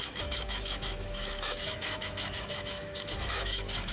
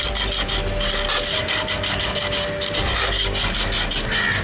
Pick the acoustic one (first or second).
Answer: second